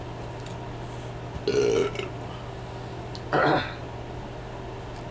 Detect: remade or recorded recorded